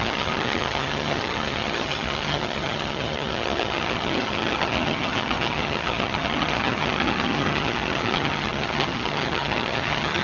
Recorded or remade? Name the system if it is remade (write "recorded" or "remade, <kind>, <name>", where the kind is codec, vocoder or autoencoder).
remade, vocoder, HiFi-GAN